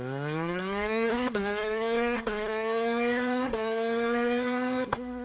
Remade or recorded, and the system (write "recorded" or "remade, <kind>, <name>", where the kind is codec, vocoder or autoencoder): remade, codec, SNAC